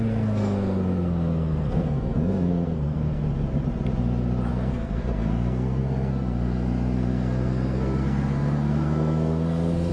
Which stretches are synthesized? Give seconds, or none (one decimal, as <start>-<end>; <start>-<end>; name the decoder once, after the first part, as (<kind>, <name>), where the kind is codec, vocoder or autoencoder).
0.0-3.2 (codec, SNAC); 4.5-9.9